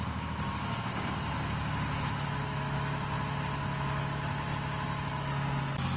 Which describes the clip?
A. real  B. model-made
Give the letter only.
A